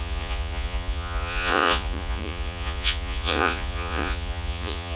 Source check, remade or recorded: remade